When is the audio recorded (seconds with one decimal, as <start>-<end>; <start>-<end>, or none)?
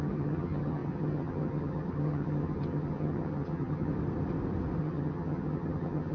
3.9-4.8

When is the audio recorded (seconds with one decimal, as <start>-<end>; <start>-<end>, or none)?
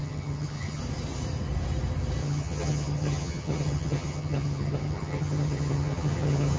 0.8-2.2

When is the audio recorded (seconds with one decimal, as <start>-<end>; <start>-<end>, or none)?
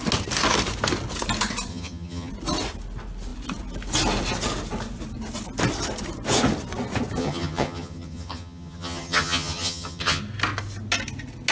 0.0-1.7; 2.3-7.2; 10.2-11.5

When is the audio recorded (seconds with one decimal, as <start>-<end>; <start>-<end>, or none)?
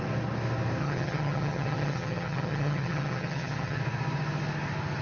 0.0-0.8; 3.8-5.0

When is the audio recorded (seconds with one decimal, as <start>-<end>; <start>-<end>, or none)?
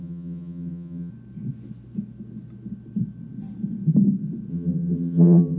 1.1-4.5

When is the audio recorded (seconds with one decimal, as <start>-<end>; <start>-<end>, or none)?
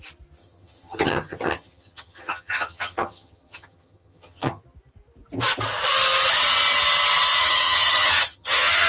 0.0-0.4; 4.6-7.4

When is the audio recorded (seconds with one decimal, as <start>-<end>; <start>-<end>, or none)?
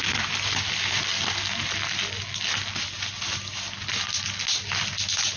0.0-5.4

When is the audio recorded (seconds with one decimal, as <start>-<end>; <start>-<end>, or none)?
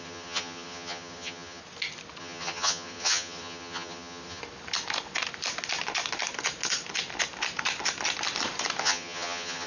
1.6-2.2; 4.4-8.8